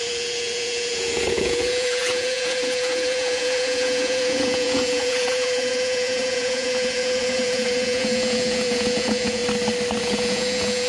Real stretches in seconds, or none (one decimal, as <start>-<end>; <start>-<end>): 9.4-10.0